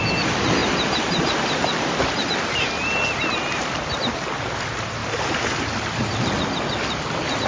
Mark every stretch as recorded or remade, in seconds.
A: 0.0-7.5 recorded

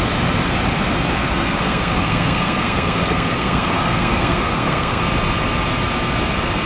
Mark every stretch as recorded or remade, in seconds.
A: 0.0-1.2 recorded; 1.2-5.0 remade; 5.0-6.7 recorded

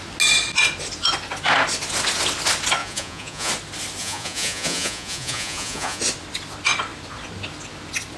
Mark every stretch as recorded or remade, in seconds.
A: 0.0-2.8 recorded; 2.8-3.5 remade; 3.5-4.0 recorded; 4.0-6.0 remade; 6.0-8.2 recorded

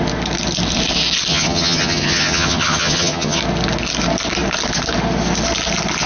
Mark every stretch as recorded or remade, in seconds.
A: 0.0-1.3 recorded; 1.3-3.4 remade; 3.4-6.1 recorded

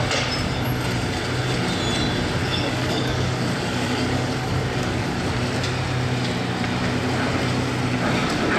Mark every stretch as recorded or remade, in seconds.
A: 0.0-2.4 recorded; 2.4-5.2 remade; 5.2-8.6 recorded

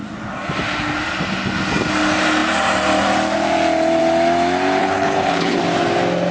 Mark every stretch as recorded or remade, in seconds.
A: 0.0-4.8 recorded; 4.8-5.6 remade; 5.6-6.3 recorded

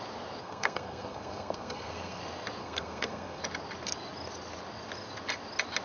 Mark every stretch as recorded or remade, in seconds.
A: 0.0-0.4 recorded; 0.4-2.2 remade; 2.2-2.6 recorded; 2.6-3.4 remade; 3.4-5.8 recorded